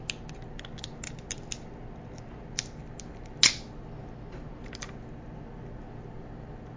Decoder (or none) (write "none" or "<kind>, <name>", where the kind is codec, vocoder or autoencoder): none